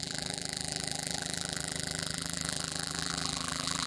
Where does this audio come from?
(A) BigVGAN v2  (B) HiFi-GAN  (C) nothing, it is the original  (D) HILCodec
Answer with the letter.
A